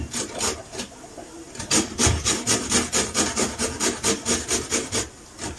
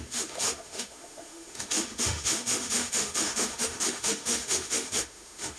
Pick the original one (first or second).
first